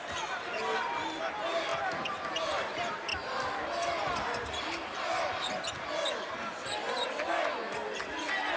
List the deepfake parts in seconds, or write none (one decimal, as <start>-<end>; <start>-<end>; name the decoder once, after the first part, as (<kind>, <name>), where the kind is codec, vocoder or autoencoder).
none